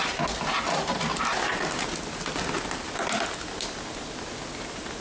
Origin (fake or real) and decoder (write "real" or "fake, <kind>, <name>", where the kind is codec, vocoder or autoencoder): real